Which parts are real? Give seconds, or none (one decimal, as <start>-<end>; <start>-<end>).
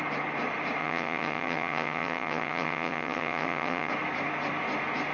0.0-0.8; 3.9-5.1